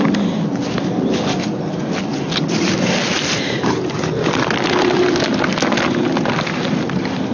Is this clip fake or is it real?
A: real